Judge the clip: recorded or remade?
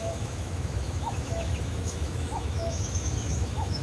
remade